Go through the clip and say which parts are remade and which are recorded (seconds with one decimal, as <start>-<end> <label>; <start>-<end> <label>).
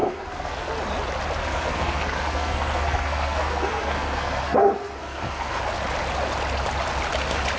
0.0-0.7 remade; 0.7-1.4 recorded; 1.4-5.6 remade; 5.6-7.6 recorded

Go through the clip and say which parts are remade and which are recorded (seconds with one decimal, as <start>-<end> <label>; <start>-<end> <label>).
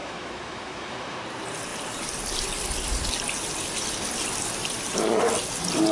0.0-1.2 remade; 1.2-5.9 recorded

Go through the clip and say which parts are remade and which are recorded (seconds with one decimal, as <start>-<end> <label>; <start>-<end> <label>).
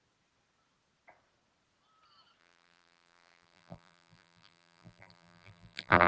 0.0-2.4 recorded; 2.4-6.1 remade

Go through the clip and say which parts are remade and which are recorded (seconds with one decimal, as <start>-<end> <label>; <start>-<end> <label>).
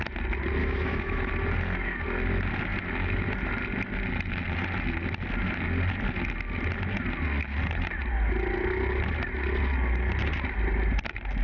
0.0-0.6 recorded; 0.6-1.3 remade; 1.3-11.4 recorded